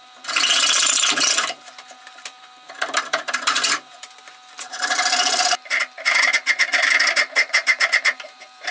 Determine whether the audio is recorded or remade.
remade